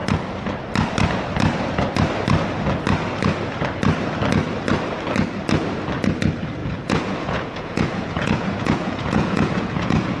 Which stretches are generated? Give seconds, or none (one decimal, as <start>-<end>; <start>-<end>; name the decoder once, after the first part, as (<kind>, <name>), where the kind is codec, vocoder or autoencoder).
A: 6.6-10.2 (vocoder, Vocos)